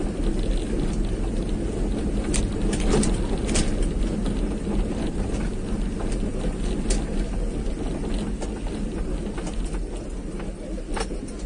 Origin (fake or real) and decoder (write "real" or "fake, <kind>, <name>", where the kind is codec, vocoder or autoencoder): real